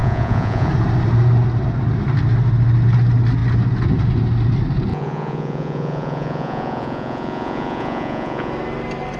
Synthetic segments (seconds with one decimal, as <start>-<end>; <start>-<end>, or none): 0.0-0.7; 4.9-8.5